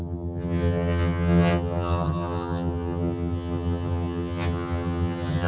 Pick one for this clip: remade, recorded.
remade